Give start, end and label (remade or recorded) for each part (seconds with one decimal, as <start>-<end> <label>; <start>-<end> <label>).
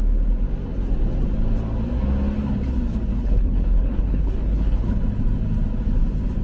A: 0.0-3.1 recorded; 3.1-5.0 remade; 5.0-6.4 recorded